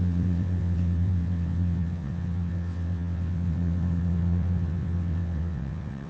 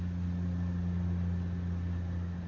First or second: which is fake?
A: first